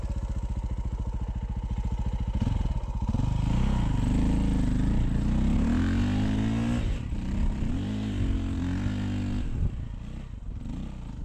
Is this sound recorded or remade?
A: recorded